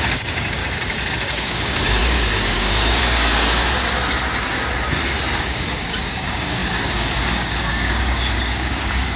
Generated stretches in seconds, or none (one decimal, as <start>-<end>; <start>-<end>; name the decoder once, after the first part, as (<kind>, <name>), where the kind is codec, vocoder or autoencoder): 0.0-0.6 (codec, DAC); 1.4-3.6; 5.4-9.2